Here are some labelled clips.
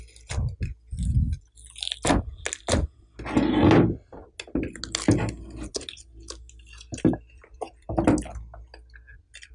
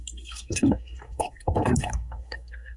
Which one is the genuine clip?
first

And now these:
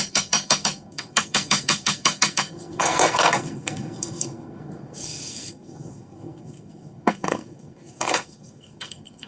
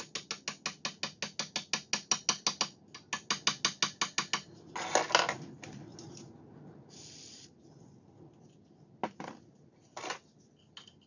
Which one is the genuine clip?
second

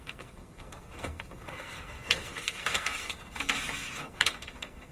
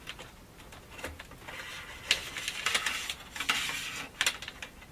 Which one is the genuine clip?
second